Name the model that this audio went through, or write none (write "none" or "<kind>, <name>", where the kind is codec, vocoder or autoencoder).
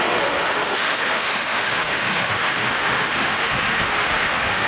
autoencoder, DAC-VAE